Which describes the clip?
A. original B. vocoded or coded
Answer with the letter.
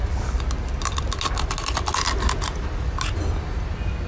A